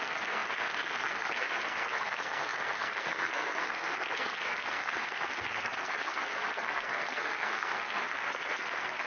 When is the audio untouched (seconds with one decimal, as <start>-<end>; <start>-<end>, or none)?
none